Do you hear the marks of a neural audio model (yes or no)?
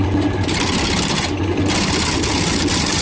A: no